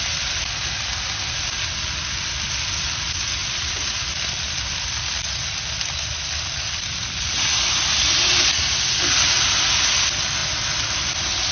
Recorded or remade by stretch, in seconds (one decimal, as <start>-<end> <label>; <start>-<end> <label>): 0.0-11.5 recorded